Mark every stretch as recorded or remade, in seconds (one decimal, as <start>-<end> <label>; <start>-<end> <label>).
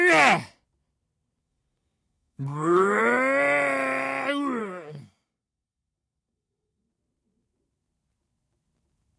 0.0-1.4 recorded; 1.4-3.0 remade; 3.0-4.6 recorded; 4.6-6.9 remade; 6.9-9.2 recorded